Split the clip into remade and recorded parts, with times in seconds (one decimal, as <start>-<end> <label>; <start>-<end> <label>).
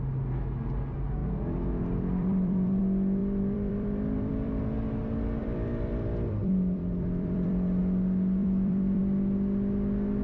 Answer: 0.0-1.2 recorded; 1.2-2.8 remade; 2.8-3.2 recorded; 3.2-4.6 remade; 4.6-5.4 recorded; 5.4-7.8 remade; 7.8-8.4 recorded; 8.4-9.0 remade; 9.0-10.2 recorded